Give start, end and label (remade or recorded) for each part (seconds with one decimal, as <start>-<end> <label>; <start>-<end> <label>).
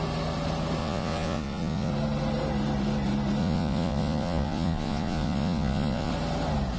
0.0-0.8 recorded; 0.8-1.9 remade; 1.9-3.4 recorded; 3.4-6.1 remade; 6.1-6.8 recorded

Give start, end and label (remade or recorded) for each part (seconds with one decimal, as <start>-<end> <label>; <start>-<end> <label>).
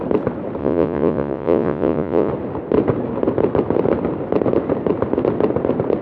0.0-0.6 recorded; 0.6-2.3 remade; 2.3-6.0 recorded